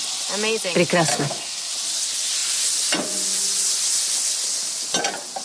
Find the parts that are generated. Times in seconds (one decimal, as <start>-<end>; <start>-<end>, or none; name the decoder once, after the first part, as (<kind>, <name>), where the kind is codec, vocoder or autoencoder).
1.1-1.7 (codec, SNAC)